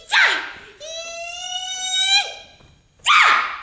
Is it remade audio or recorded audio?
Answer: recorded